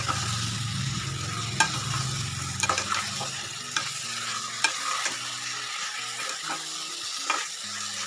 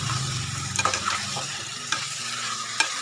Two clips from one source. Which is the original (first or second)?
first